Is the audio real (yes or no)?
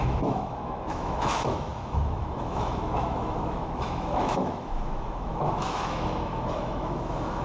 no